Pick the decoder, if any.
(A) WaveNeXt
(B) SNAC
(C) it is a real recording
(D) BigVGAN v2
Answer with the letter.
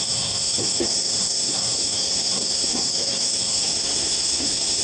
B